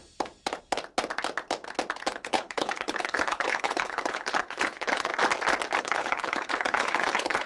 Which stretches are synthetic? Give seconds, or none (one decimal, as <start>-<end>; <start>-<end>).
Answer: 2.1-5.1; 5.8-7.5